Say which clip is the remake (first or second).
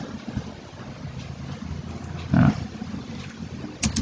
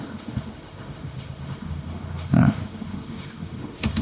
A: second